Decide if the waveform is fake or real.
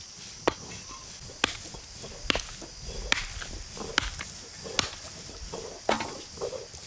real